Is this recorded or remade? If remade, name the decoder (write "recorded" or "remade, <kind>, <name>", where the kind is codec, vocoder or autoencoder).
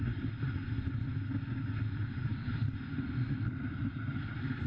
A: recorded